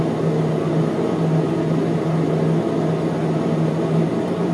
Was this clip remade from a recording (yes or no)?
no